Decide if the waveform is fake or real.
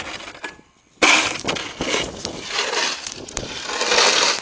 real